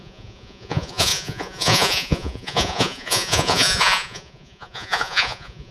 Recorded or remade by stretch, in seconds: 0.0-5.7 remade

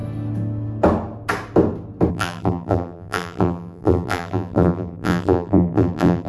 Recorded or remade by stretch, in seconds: 0.0-2.1 recorded; 2.1-6.3 remade

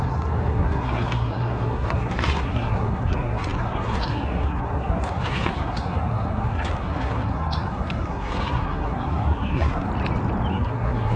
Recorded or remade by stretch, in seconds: 0.0-9.9 remade; 9.9-10.5 recorded; 10.5-11.2 remade

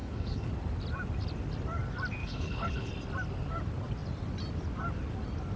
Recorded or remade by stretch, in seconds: 0.0-0.5 remade; 0.5-2.2 recorded; 2.2-2.9 remade; 2.9-5.6 recorded

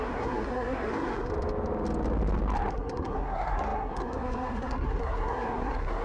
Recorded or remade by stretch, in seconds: 0.0-1.3 remade; 1.3-2.7 recorded; 2.7-6.0 remade

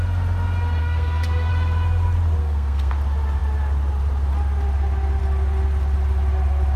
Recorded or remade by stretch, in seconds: 0.0-0.8 recorded; 0.8-1.5 remade; 1.5-2.4 recorded; 2.4-2.9 remade; 2.9-6.8 recorded